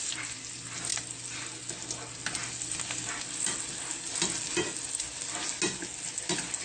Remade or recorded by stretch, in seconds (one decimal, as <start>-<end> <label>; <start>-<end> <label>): 0.0-6.6 recorded